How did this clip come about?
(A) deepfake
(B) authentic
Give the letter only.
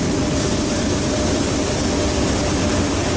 A